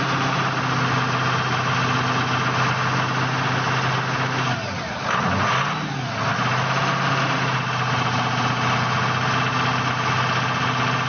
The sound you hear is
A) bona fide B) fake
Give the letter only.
A